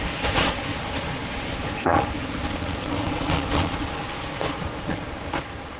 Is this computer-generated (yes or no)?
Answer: yes